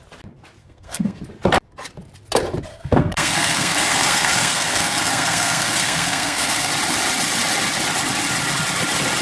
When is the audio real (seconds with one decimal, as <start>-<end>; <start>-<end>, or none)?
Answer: 0.0-0.6; 1.2-2.7; 6.7-9.2

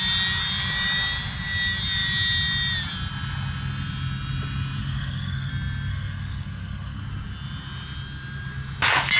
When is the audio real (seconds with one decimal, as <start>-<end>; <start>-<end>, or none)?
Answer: 0.0-4.8; 5.5-5.9; 7.0-9.2

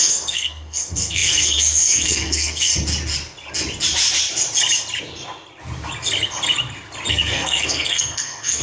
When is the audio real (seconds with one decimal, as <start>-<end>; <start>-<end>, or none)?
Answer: 2.7-7.1

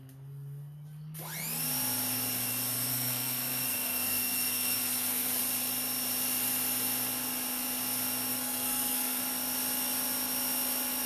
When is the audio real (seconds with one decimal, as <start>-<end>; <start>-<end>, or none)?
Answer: 0.0-2.9; 5.4-8.3; 9.2-11.1

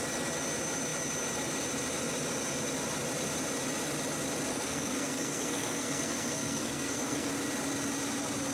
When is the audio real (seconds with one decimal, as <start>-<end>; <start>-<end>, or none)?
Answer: 0.0-4.5; 7.3-8.5

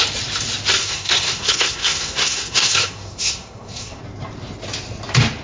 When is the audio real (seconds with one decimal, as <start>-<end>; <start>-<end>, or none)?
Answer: 0.0-0.8; 4.0-5.4